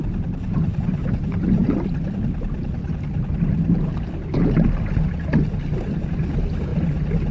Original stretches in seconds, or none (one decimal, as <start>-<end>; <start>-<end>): 0.0-7.3